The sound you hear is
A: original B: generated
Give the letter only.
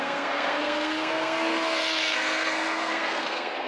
B